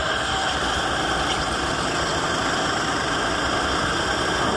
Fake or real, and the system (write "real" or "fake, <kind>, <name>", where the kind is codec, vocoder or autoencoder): real